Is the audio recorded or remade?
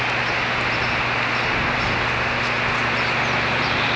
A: recorded